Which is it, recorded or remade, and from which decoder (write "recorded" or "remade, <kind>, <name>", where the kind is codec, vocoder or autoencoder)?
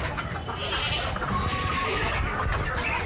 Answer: recorded